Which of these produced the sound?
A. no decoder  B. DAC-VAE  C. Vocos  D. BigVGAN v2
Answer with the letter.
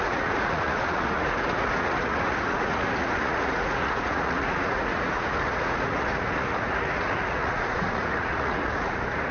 C